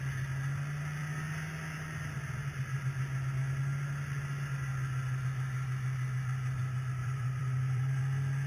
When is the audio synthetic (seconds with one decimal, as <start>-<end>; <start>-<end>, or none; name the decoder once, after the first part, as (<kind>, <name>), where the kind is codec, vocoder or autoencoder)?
7.0-8.0 (vocoder, BigVGAN v2)